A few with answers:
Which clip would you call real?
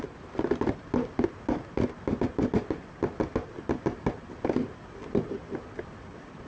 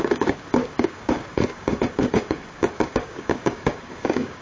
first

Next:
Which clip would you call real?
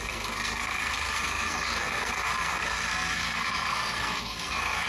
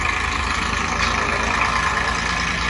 second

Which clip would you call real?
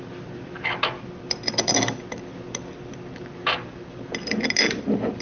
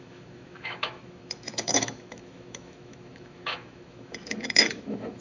first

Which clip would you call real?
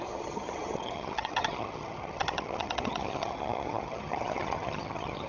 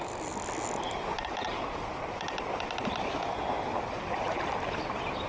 second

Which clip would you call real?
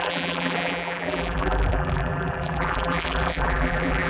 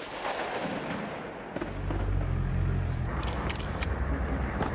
second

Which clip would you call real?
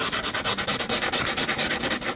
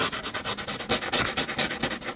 second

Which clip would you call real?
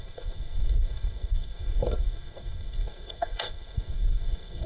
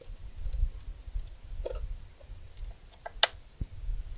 second